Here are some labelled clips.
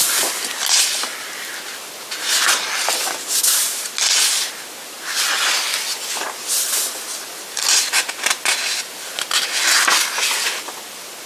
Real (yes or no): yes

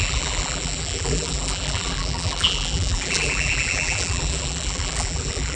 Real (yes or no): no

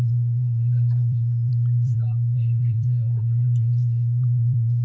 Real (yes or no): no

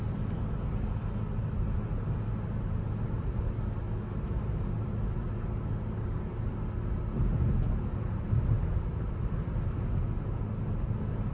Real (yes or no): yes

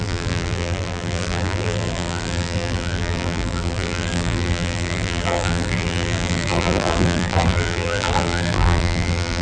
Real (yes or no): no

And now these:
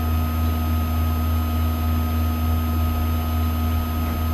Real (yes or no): yes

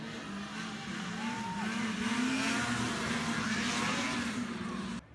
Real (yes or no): yes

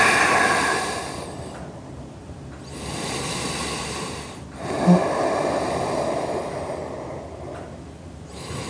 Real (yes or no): yes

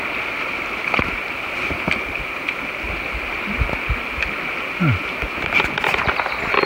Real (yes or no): yes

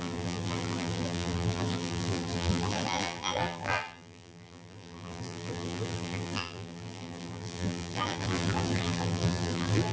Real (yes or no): no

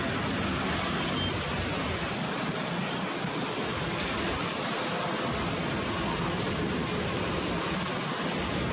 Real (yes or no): yes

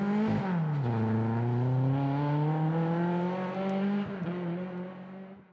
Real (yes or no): yes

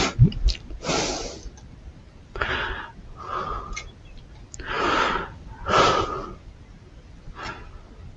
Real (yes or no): yes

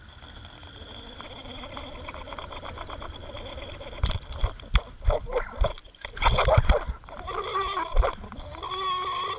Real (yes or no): no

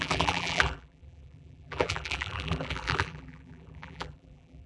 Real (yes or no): no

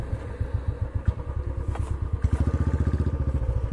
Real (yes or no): yes